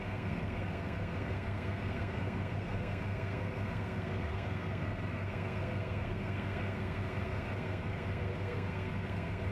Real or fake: fake